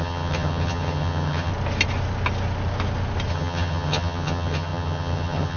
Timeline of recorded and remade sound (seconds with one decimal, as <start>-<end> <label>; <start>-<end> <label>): 0.0-1.5 remade; 1.5-3.3 recorded; 3.3-5.6 remade